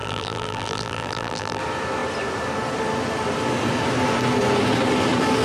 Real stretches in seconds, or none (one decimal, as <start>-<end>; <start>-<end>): 1.6-5.4